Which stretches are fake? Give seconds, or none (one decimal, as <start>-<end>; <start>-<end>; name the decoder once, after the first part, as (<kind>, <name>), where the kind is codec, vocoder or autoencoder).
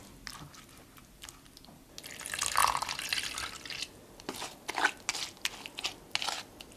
none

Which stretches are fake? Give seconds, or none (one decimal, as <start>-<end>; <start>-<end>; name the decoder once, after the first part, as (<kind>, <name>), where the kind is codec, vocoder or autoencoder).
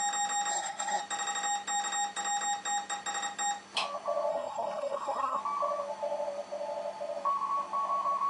0.5-1.0 (codec, SNAC); 4.3-5.4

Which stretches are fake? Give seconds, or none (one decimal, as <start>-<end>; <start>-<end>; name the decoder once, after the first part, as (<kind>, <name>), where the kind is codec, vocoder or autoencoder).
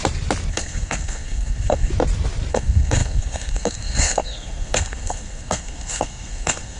0.5-1.9 (codec, SNAC); 2.5-6.8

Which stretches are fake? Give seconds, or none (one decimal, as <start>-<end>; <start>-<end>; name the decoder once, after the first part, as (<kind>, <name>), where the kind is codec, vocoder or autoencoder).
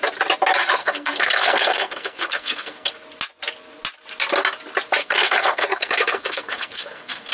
0.8-2.9 (codec, SNAC); 5.0-7.3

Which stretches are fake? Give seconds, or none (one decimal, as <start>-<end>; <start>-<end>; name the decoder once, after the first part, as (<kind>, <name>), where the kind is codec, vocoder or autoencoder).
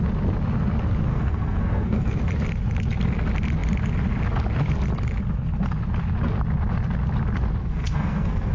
1.1-2.2 (codec, SNAC); 7.6-8.5